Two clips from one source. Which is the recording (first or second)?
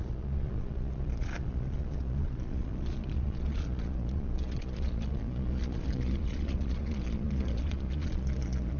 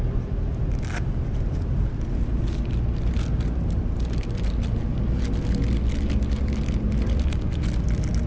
second